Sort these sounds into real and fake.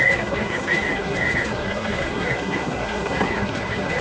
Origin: fake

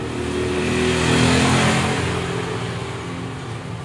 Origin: real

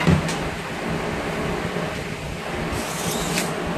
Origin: real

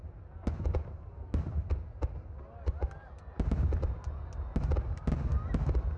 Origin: real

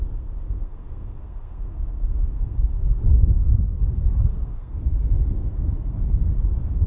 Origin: fake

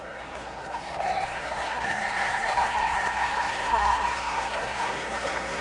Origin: fake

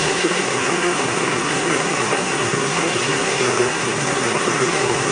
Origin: fake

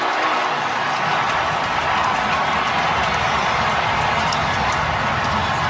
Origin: real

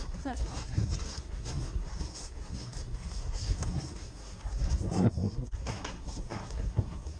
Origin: fake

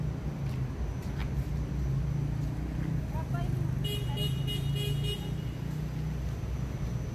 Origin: real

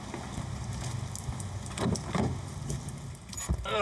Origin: real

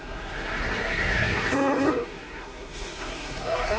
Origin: fake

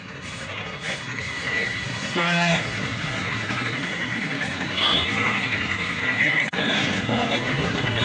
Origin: fake